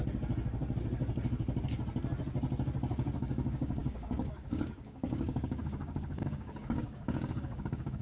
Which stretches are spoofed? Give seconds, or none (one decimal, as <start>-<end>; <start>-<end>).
3.2-8.0